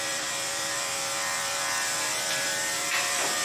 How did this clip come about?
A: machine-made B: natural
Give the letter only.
A